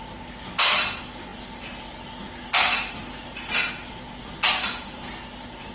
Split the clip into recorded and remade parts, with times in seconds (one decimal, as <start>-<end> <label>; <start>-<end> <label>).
0.0-5.7 recorded